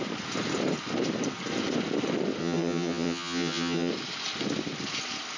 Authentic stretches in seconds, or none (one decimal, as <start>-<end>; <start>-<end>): 0.0-2.4; 3.9-5.4